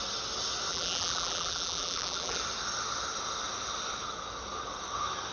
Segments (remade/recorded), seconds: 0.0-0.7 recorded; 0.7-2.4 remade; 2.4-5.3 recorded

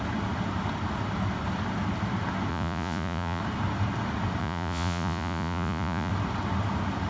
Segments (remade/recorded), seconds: 0.0-2.5 recorded; 2.5-3.4 remade; 3.4-4.4 recorded; 4.4-6.1 remade; 6.1-7.1 recorded